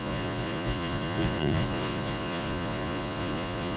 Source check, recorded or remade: remade